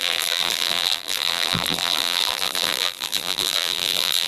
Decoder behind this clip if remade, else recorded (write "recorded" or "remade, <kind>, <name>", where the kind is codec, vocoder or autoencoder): remade, vocoder, BigVGAN v2